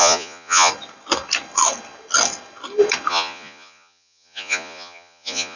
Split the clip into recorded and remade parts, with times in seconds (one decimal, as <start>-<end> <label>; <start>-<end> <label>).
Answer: 0.0-0.7 remade; 0.7-3.1 recorded; 3.1-5.6 remade